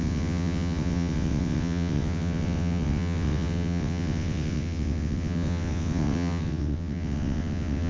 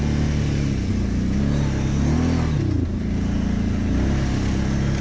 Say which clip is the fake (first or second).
first